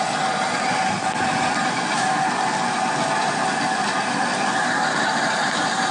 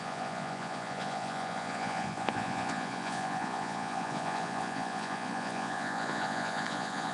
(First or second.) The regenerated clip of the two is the second